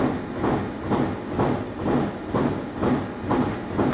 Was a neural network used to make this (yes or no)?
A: no